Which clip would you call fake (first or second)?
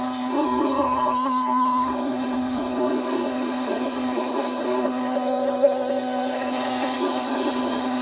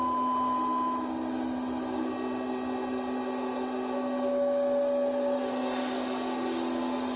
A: first